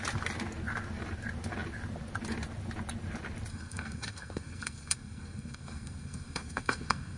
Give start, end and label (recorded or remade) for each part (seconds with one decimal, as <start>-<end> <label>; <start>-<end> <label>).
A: 0.0-3.5 recorded; 3.5-7.2 remade